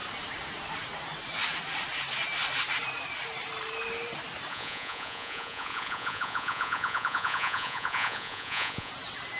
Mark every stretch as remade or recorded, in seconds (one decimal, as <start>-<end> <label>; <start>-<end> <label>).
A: 0.0-4.5 recorded; 4.5-8.9 remade; 8.9-9.4 recorded